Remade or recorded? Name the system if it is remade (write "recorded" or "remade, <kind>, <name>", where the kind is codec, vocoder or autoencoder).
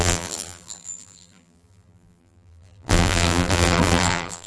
remade, vocoder, BigVGAN v2